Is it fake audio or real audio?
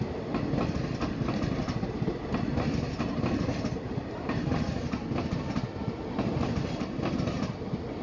real